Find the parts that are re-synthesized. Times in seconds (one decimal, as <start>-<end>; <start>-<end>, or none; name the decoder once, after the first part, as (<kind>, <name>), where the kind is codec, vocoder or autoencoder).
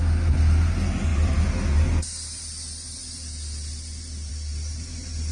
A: none